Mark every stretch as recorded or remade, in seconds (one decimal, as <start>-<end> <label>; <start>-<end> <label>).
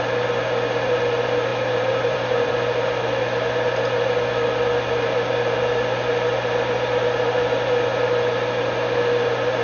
0.0-1.5 recorded; 1.5-2.5 remade; 2.5-9.6 recorded